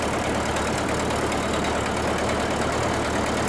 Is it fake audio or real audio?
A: real